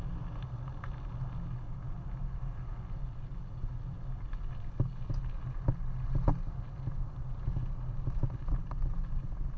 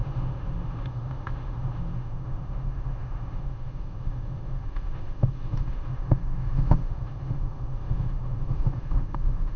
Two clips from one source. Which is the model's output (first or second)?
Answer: second